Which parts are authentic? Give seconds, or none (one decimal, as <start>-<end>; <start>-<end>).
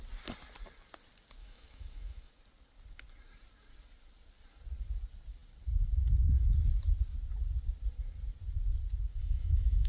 0.0-1.4; 2.3-9.2